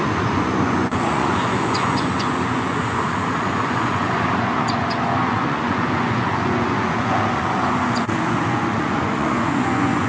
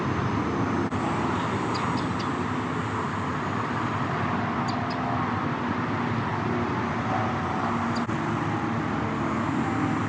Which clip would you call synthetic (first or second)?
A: first